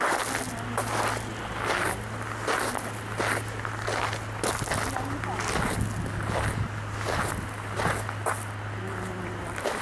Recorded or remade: recorded